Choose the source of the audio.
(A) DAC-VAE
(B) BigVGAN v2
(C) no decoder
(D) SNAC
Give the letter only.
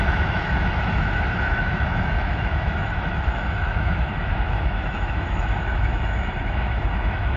A